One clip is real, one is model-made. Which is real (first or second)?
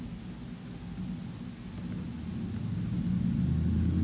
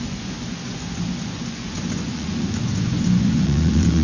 first